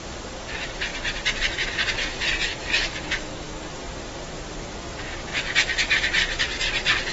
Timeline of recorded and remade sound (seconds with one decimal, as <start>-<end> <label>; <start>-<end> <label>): 0.0-2.9 recorded; 2.9-3.7 remade; 3.7-7.1 recorded